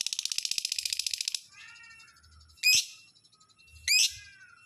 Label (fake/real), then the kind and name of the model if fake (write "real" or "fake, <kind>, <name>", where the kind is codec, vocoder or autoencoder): real